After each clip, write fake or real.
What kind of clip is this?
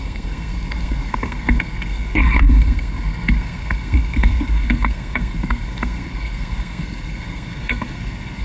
fake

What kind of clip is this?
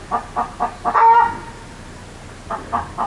real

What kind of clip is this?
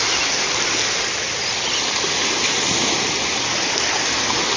real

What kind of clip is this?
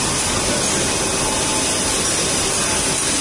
real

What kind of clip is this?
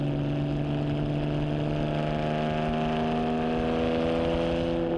real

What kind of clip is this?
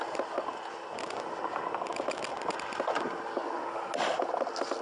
real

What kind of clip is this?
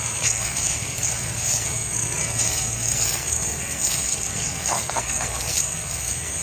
fake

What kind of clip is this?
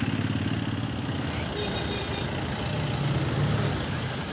real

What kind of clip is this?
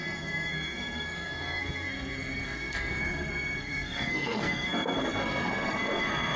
fake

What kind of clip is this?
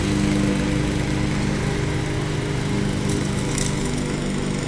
real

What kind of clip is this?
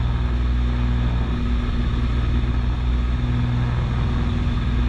real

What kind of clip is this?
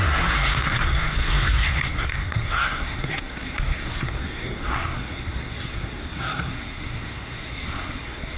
fake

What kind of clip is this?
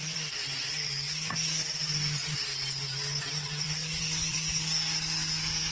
real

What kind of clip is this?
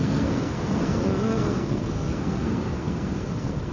fake